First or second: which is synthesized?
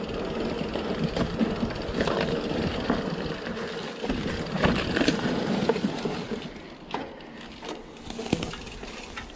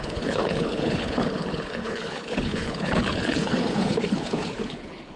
second